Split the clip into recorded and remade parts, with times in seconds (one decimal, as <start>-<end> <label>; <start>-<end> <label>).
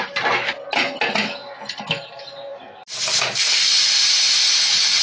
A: 0.0-5.0 recorded